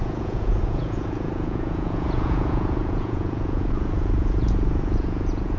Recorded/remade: remade